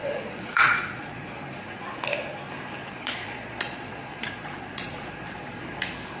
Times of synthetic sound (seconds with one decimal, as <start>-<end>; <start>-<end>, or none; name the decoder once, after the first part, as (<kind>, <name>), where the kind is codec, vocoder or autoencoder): 0.0-1.4 (vocoder, Vocos); 2.8-4.9